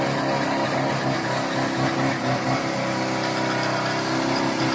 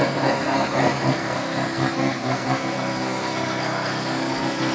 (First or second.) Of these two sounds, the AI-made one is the second